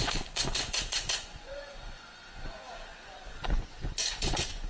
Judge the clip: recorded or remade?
remade